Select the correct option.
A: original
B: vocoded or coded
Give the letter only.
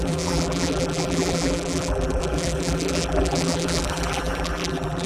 B